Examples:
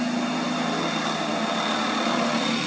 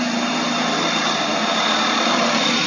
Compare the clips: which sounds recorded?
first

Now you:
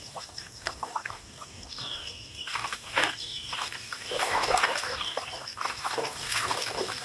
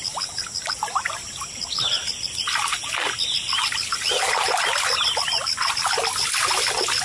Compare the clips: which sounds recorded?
second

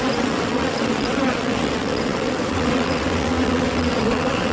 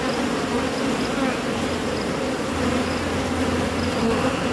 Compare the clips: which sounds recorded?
second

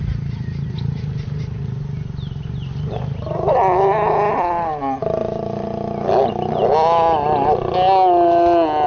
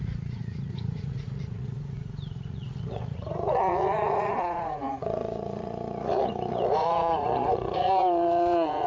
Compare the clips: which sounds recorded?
first